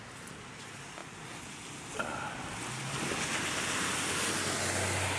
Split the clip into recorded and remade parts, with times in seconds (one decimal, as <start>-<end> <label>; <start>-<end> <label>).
0.0-5.2 recorded